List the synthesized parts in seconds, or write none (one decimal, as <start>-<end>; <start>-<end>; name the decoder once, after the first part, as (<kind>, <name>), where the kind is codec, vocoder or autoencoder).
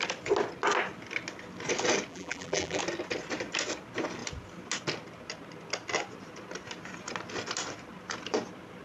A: 2.1-2.8 (vocoder, BigVGAN v2)